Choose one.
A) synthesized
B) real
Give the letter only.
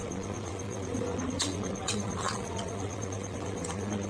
A